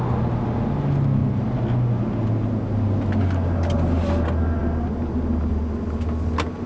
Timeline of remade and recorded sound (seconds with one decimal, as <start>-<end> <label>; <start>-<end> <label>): 0.0-6.7 recorded